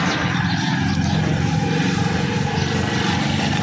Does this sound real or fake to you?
real